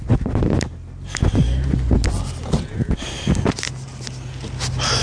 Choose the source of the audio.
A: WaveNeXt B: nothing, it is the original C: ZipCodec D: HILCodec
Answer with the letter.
B